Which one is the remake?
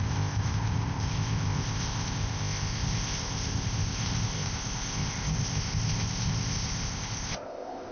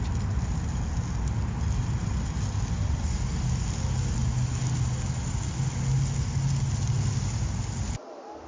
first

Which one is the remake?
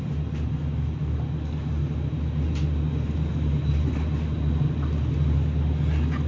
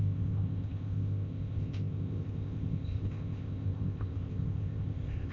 second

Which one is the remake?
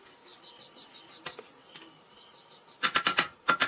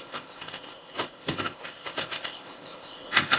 second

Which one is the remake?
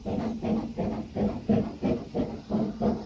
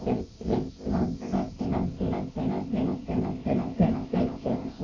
second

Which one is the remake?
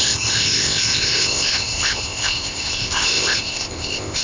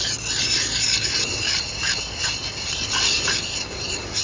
first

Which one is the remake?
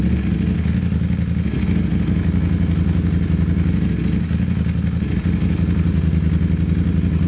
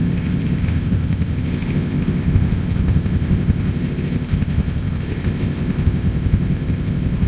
second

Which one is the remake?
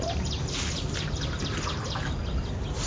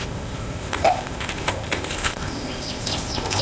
second